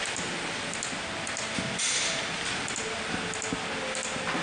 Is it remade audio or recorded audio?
recorded